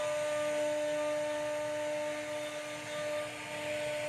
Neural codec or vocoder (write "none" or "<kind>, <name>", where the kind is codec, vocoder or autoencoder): none